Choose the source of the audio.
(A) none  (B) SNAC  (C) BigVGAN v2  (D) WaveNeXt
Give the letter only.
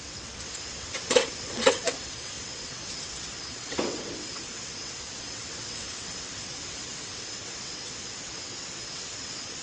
D